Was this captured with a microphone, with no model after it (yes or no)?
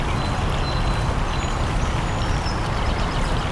yes